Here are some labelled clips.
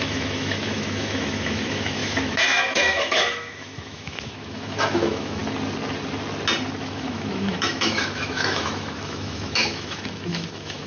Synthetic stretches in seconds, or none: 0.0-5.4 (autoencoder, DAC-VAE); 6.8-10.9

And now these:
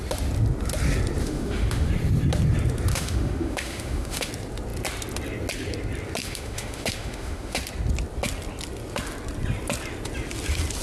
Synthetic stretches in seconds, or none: 1.2-1.9 (autoencoder, DAC-VAE); 2.9-4.3; 6.2-7.6

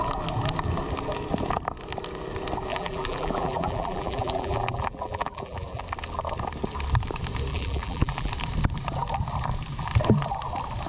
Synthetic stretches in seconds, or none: 2.7-5.8 (vocoder, BigVGAN v2); 7.5-8.3

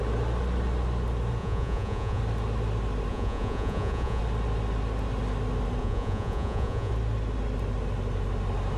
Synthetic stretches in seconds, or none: 1.4-2.2 (vocoder, Vocos); 3.1-4.2; 5.8-6.9

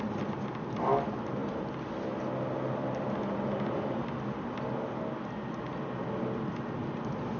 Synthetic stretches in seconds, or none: none

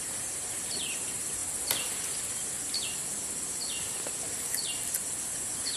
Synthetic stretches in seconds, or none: 0.0-1.4 (vocoder, BigVGAN v2); 4.4-5.8